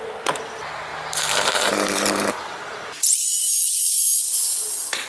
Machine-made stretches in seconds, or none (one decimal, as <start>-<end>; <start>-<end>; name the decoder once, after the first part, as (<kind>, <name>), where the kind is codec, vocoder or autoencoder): 0.9-4.0 (vocoder, BigVGAN v2)